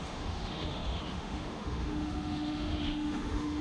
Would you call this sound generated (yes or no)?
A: yes